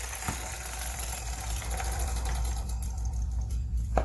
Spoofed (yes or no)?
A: yes